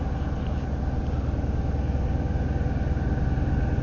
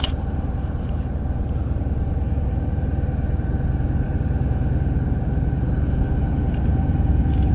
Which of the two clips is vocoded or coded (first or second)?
second